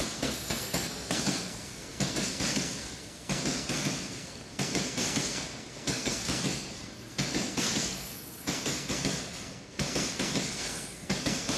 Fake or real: fake